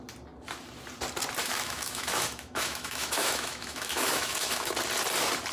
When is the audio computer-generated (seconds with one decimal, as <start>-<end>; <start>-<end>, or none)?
1.4-4.7